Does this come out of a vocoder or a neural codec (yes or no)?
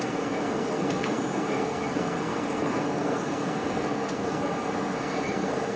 yes